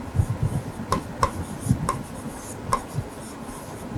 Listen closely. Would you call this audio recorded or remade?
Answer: recorded